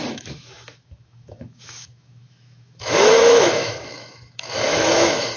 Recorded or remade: remade